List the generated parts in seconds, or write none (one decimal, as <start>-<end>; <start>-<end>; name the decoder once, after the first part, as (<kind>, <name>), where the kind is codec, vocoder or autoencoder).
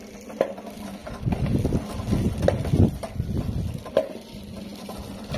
none